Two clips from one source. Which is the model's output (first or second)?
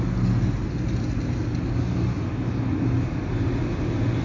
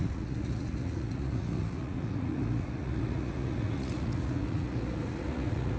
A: second